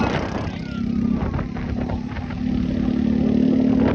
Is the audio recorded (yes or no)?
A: yes